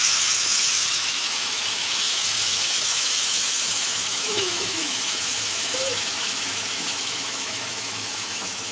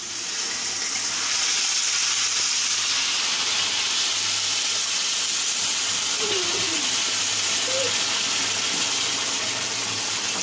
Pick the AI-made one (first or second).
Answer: first